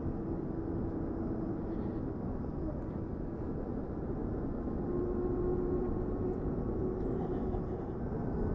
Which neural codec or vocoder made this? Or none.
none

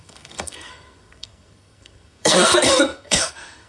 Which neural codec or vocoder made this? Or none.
codec, SNAC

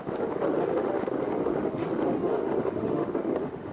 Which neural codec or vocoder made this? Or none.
autoencoder, DAC-VAE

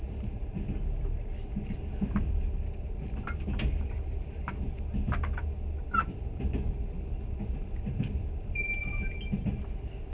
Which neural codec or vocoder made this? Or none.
none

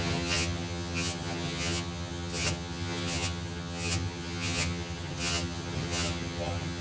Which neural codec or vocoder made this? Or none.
vocoder, HiFi-GAN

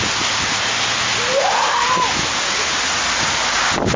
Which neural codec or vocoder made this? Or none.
none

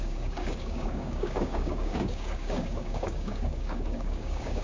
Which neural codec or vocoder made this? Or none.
codec, DAC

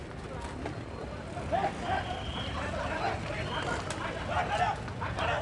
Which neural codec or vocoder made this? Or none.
none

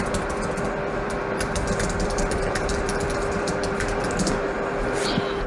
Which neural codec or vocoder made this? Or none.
vocoder, BigVGAN v2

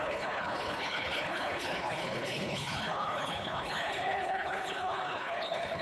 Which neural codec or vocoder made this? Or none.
codec, HILCodec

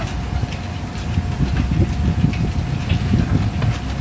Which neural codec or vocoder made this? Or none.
none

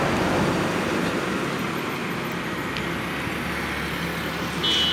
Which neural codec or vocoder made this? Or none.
none